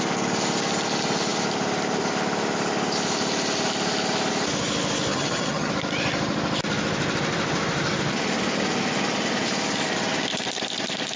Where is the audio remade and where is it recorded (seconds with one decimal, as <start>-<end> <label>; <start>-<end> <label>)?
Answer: 0.0-5.1 recorded; 5.1-5.7 remade; 5.7-11.2 recorded